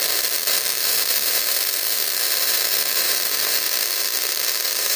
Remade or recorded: remade